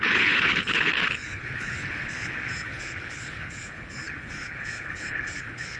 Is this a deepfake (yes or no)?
yes